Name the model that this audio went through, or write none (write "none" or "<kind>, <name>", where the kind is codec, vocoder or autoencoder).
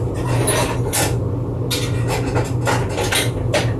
none